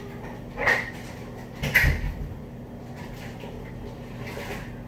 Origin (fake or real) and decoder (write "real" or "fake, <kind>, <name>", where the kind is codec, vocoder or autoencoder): real